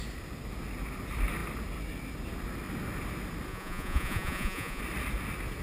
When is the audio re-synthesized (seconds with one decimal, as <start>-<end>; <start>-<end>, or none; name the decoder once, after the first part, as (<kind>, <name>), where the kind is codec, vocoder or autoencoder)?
3.5-4.8 (vocoder, Vocos)